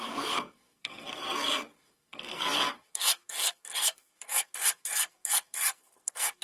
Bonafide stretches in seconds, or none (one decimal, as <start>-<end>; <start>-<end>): none